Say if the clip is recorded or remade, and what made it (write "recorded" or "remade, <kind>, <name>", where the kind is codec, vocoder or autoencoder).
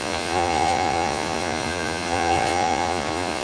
remade, vocoder, Vocos